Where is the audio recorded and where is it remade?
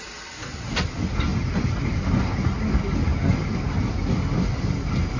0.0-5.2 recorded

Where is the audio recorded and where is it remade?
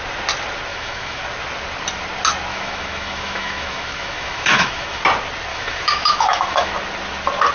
0.0-0.7 recorded; 0.7-1.2 remade; 1.2-2.5 recorded; 2.5-5.0 remade; 5.0-5.5 recorded; 5.5-6.7 remade; 6.7-7.5 recorded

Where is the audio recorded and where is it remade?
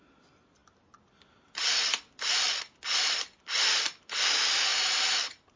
0.0-5.6 recorded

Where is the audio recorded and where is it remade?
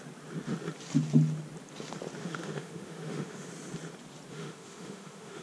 0.0-2.2 recorded; 2.2-3.5 remade; 3.5-4.3 recorded; 4.3-5.4 remade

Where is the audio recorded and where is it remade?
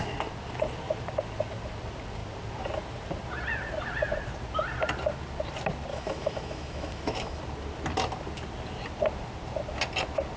0.0-5.9 recorded; 5.9-7.4 remade; 7.4-10.4 recorded